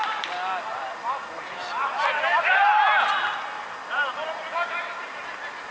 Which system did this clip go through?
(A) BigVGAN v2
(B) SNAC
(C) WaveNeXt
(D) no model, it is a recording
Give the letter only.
D